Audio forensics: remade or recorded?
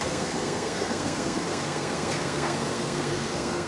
remade